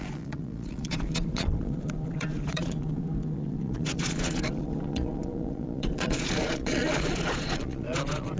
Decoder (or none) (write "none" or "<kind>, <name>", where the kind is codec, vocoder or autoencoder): vocoder, Vocos